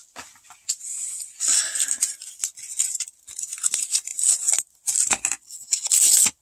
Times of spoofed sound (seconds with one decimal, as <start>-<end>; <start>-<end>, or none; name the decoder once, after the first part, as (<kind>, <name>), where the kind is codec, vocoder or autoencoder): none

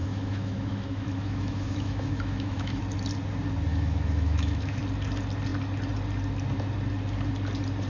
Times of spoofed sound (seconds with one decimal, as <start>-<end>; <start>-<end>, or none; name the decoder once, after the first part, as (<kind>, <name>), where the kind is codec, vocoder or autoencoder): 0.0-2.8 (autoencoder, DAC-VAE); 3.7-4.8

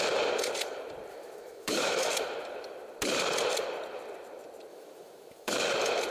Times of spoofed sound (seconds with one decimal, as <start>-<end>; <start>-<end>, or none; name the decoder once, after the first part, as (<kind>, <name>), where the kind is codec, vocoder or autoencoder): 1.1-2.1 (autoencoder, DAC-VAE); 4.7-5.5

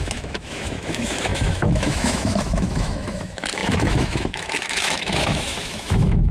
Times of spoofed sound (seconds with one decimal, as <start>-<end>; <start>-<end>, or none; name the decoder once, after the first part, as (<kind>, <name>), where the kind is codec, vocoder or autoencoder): 0.0-6.3 (autoencoder, DAC-VAE)

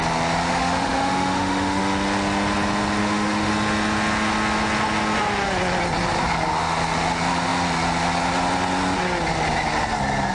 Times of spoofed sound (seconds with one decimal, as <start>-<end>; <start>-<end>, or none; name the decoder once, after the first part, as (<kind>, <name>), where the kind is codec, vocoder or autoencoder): 0.5-1.8 (autoencoder, DAC-VAE); 3.0-3.5

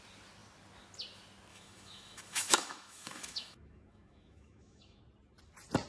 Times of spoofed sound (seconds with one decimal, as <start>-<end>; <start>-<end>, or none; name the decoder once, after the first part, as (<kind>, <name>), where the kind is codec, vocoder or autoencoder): 1.5-5.0 (autoencoder, DAC-VAE)

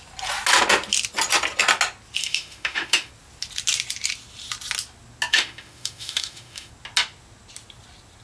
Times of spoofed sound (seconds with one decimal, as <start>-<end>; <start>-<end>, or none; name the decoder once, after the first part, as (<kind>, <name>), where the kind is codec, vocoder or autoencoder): 2.2-3.1 (autoencoder, DAC-VAE); 5.3-6.7

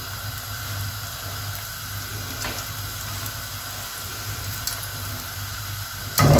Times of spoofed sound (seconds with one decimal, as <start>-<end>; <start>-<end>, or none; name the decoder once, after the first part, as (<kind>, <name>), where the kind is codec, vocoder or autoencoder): none